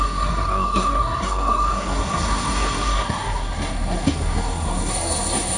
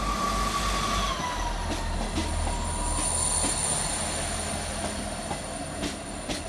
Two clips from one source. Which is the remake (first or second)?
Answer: first